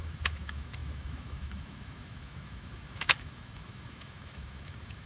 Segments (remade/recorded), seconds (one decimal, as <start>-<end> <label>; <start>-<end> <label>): 0.0-5.1 remade